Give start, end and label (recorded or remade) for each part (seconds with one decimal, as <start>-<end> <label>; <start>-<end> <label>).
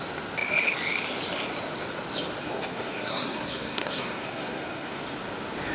0.0-2.4 recorded; 2.4-5.0 remade; 5.0-5.7 recorded